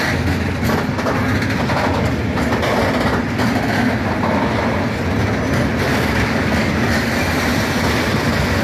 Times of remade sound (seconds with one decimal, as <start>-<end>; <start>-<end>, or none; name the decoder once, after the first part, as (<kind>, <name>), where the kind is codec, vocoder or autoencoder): 5.9-7.1 (codec, DAC)